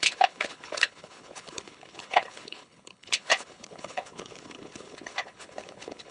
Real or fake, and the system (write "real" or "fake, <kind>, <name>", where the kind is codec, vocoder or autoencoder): fake, codec, HILCodec